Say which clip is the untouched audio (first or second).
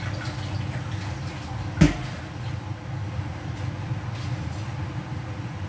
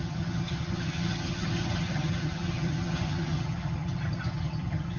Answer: first